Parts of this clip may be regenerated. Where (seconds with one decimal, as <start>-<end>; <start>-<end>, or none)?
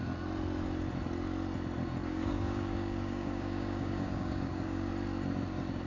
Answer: 2.0-4.9